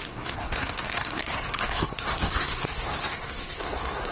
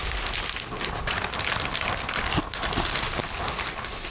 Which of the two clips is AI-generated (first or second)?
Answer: first